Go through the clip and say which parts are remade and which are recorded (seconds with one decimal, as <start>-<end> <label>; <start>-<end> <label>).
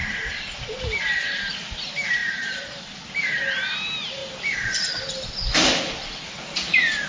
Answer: 0.0-2.2 recorded; 2.2-2.8 remade; 2.8-4.2 recorded; 4.2-4.9 remade; 4.9-7.1 recorded